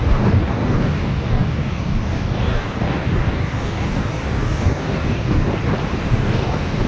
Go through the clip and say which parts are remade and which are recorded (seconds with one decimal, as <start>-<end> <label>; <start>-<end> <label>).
0.0-5.5 remade; 5.5-6.0 recorded; 6.0-6.9 remade